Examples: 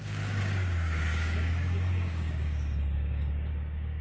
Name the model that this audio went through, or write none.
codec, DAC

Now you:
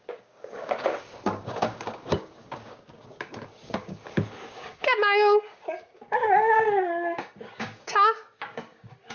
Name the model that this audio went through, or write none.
codec, DAC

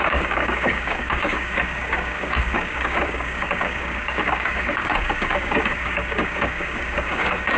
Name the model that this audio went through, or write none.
codec, DAC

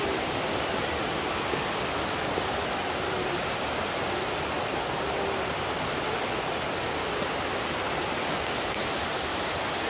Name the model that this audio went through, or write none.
none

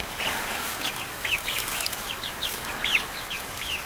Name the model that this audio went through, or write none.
codec, DAC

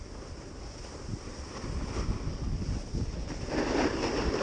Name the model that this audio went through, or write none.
none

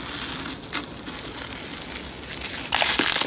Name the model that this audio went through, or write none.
none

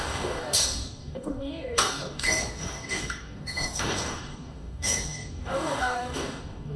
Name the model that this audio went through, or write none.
codec, DAC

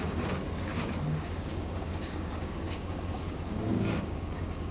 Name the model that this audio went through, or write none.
codec, DAC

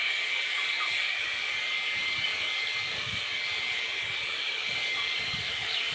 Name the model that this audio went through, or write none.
codec, DAC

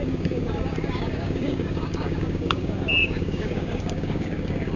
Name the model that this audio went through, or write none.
codec, DAC